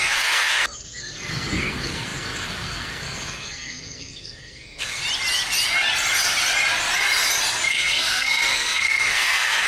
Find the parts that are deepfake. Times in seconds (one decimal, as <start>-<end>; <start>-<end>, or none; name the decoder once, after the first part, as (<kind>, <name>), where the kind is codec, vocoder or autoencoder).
0.0-5.0 (codec, SNAC); 7.7-9.7